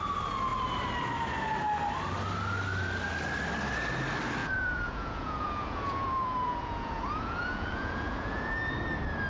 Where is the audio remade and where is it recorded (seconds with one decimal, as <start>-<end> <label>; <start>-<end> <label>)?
0.0-4.4 recorded; 4.4-8.7 remade; 8.7-9.3 recorded

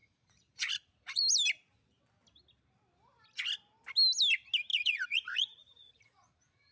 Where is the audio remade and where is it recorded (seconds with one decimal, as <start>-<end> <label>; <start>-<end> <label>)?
0.0-1.2 remade; 1.2-4.7 recorded; 4.7-6.7 remade

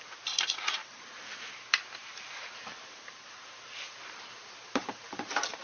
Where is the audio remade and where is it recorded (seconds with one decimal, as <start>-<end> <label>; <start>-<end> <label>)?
0.0-0.8 recorded; 0.8-1.5 remade; 1.5-2.0 recorded; 2.0-3.4 remade; 3.4-4.8 recorded; 4.8-5.6 remade